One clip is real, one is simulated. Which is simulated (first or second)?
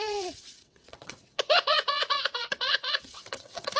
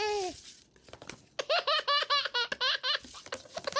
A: first